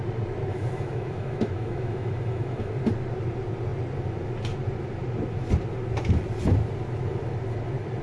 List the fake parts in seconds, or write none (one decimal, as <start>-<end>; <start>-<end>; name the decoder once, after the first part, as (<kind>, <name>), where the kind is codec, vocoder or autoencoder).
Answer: 0.5-2.7 (autoencoder, DAC-VAE)